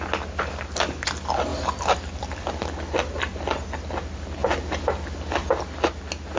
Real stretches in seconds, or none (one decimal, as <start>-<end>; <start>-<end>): 0.0-1.5; 2.5-6.4